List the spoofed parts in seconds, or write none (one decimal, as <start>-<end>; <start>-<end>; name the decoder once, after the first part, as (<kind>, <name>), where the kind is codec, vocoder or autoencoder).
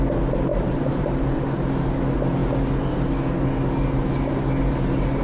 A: 0.5-1.4 (vocoder, BigVGAN v2)